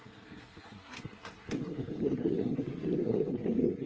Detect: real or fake fake